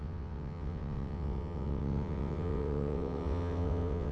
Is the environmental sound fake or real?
fake